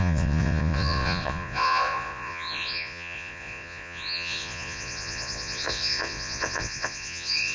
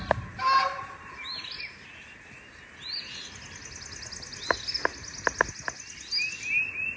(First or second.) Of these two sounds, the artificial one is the first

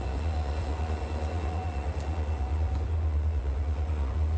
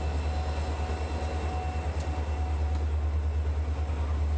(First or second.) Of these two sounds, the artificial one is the first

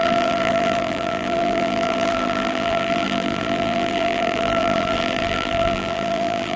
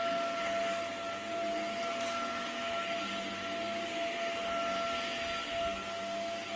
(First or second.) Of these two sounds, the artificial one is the first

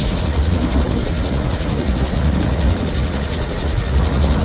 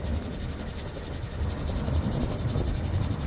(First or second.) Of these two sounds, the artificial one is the first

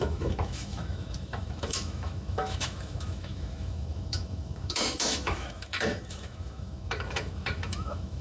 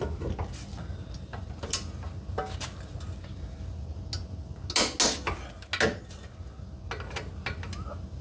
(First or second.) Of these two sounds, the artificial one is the first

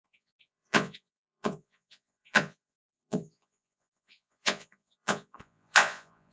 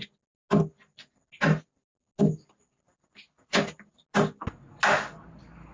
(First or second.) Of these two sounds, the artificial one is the first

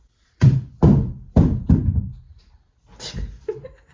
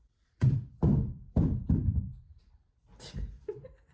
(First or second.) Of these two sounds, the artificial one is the second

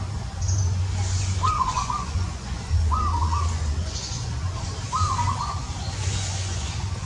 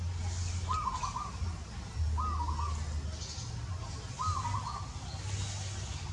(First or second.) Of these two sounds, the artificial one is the first